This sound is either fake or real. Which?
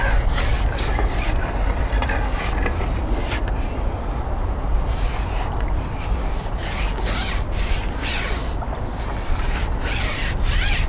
real